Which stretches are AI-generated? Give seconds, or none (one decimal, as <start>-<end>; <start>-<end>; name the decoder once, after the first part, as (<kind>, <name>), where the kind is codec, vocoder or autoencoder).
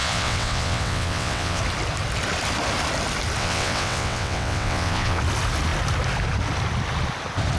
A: 0.0-1.6 (vocoder, WaveNeXt); 3.4-5.2